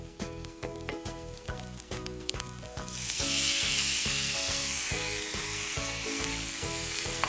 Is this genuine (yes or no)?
no